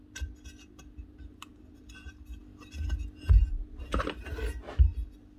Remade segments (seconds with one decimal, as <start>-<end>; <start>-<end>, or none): none